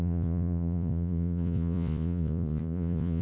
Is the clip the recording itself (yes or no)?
no